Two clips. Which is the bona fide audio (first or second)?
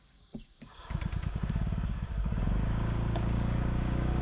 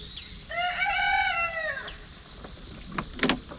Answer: second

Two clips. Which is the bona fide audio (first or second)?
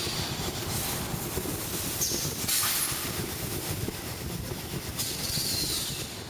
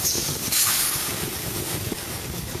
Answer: first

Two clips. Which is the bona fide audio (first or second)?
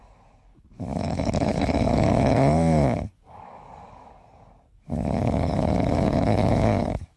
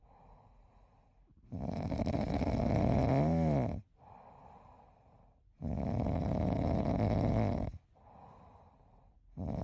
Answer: second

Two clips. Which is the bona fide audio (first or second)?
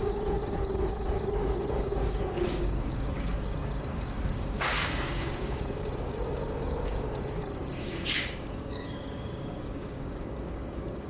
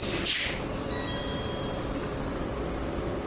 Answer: second